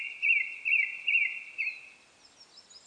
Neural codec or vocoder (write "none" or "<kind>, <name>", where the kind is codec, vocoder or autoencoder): none